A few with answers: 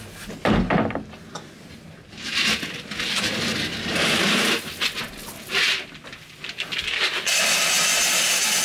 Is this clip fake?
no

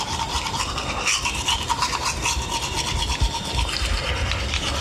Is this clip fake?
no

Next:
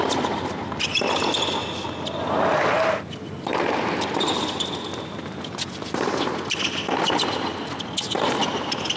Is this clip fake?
no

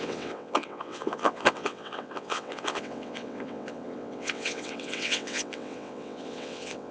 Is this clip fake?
yes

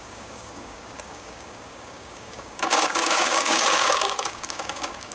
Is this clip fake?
yes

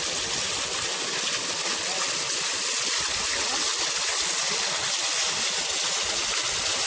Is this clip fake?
no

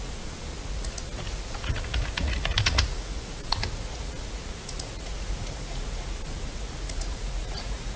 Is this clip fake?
yes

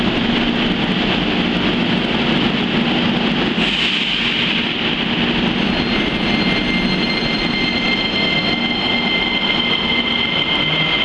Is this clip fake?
no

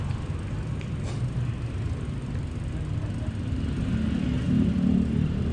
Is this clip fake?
no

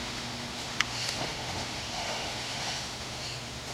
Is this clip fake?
yes